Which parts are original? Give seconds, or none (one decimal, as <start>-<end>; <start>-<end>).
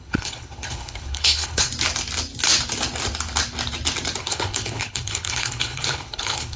1.7-4.2